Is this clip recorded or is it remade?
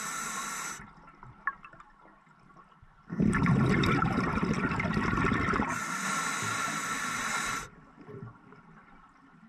recorded